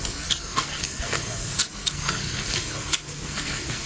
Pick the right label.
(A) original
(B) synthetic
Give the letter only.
B